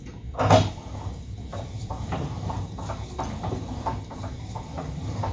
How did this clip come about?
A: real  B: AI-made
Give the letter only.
B